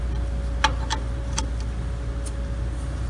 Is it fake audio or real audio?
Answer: real